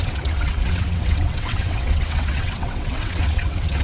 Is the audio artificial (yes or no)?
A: yes